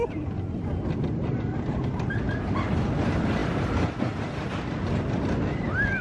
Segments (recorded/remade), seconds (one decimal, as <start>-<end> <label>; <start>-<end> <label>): 0.0-6.0 recorded